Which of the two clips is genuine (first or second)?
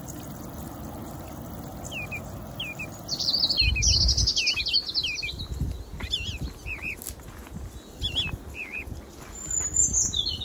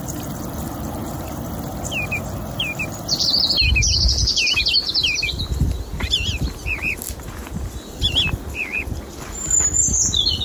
first